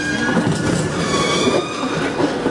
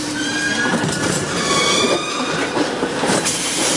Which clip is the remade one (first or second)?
second